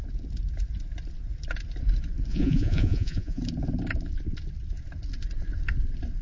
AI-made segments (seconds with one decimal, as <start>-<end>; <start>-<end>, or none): 2.3-3.4